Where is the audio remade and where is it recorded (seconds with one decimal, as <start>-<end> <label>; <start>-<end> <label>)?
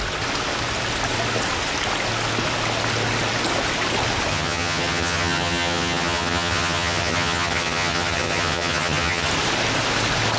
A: 0.0-4.3 recorded; 4.3-9.3 remade; 9.3-10.4 recorded